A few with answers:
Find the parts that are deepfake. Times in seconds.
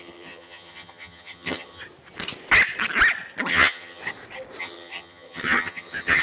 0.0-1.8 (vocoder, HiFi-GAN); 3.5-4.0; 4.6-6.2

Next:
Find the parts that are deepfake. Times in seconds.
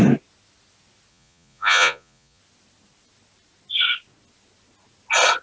1.1-2.4 (vocoder, Vocos)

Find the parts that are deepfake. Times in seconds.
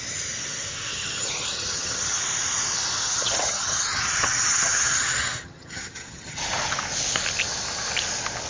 0.9-2.2 (vocoder, HiFi-GAN); 3.0-6.4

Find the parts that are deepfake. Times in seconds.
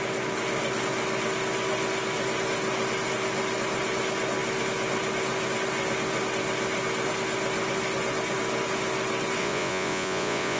9.4-10.6 (vocoder, Vocos)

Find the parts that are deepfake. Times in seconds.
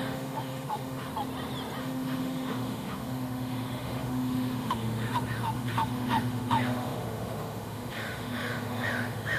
0.0-1.1 (autoencoder, DAC-VAE); 1.8-9.4